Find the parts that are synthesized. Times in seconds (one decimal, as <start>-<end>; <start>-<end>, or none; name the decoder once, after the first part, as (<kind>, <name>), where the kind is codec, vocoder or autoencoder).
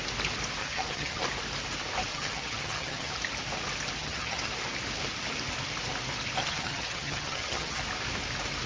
0.6-1.2 (vocoder, HiFi-GAN); 2.1-3.1; 4.0-4.5; 6.4-7.8